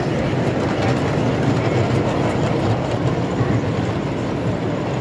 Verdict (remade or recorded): recorded